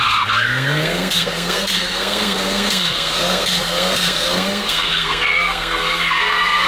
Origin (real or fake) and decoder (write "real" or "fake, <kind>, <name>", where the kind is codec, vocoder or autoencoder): fake, codec, SNAC